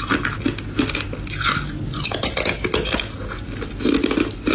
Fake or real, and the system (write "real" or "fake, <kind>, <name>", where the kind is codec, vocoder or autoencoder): real